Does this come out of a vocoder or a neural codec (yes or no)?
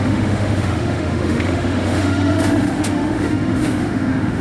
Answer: yes